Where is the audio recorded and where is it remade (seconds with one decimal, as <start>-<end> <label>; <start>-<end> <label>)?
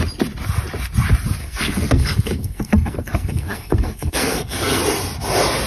0.0-1.4 recorded; 1.4-4.8 remade; 4.8-5.7 recorded